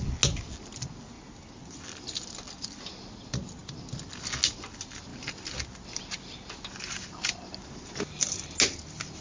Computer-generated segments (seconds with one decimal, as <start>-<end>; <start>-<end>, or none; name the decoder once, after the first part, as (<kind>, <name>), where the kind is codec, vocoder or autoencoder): none